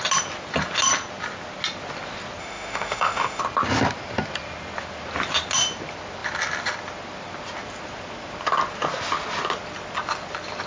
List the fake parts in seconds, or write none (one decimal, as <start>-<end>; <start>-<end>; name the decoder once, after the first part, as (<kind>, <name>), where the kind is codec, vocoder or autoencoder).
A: 2.4-3.4 (autoencoder, DAC-VAE)